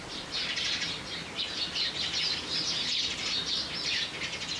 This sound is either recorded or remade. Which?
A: recorded